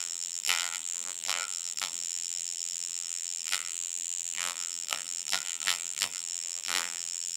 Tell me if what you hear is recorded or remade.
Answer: remade